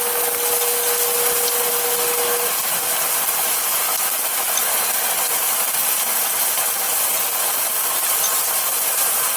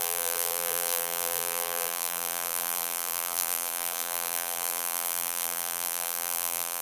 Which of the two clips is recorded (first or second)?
first